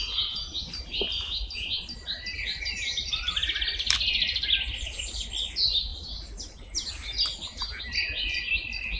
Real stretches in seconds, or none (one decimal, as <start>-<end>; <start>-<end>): 0.0-9.0